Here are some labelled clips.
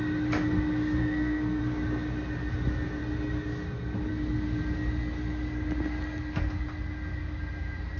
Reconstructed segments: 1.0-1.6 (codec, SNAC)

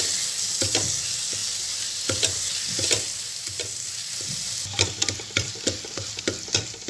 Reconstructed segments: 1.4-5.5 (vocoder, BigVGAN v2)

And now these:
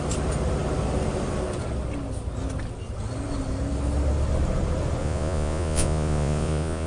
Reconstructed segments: 5.0-6.9 (vocoder, Vocos)